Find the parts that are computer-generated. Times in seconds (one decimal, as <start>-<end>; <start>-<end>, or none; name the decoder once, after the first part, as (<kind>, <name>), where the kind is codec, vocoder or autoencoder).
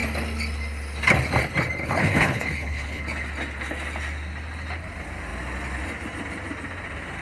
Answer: 1.8-3.0 (codec, HILCodec)